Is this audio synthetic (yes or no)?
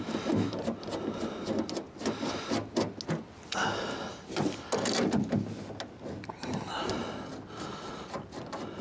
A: no